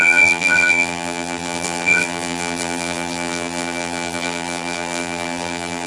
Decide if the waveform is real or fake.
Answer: fake